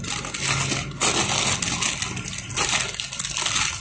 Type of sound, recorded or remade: recorded